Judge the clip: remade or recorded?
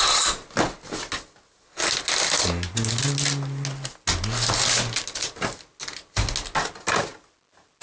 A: recorded